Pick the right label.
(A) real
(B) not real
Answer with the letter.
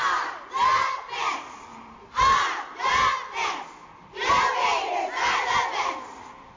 A